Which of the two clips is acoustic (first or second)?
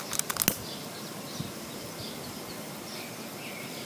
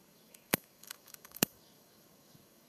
first